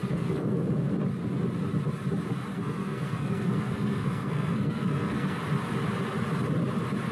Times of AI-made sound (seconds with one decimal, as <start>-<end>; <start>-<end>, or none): 0.0-0.9; 2.5-5.4